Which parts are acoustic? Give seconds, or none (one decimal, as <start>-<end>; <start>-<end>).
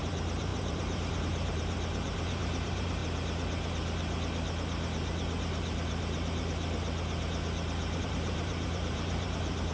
3.0-8.0